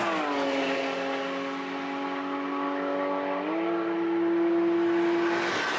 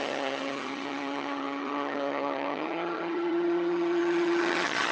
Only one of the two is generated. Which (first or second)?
second